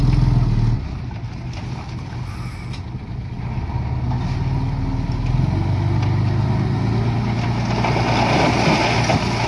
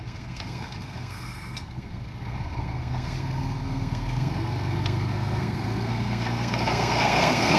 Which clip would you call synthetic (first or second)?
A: second